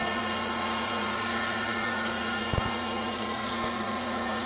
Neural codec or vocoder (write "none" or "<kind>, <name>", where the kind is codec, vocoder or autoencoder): vocoder, Vocos